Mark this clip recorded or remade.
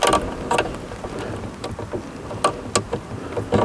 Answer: recorded